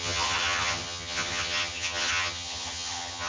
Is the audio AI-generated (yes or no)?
yes